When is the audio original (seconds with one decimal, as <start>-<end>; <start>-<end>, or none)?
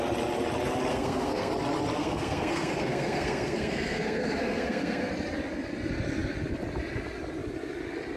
0.0-0.9; 1.5-2.0; 5.1-8.2